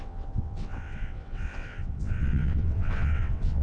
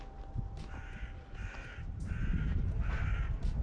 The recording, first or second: second